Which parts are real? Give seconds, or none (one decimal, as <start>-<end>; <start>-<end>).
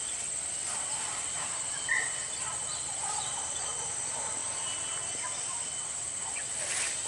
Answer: 0.0-0.6; 2.6-7.1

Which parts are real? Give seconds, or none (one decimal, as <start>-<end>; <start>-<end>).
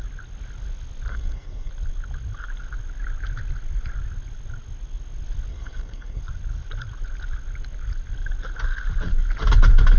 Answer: 0.0-1.1; 1.7-5.5; 6.2-10.0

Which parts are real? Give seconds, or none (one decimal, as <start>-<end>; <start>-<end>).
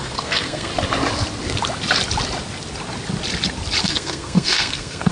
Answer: 0.7-3.8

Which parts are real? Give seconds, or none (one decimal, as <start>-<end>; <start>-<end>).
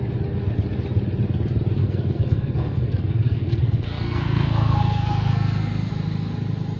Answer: 0.0-1.8; 5.9-6.8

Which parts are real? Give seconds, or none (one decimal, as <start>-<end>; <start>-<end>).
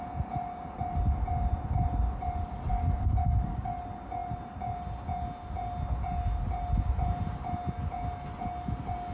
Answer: 0.0-2.7; 3.7-9.1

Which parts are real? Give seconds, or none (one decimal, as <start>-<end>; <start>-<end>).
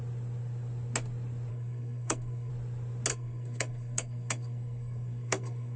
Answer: 0.0-1.5; 2.5-3.1